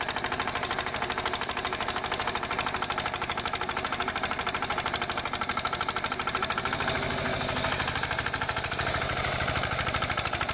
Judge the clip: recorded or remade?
remade